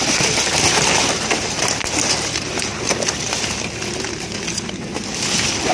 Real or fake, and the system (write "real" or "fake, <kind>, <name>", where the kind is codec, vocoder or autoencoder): real